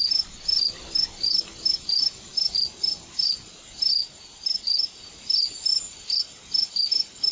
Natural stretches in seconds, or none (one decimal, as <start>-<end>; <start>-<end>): 0.0-7.3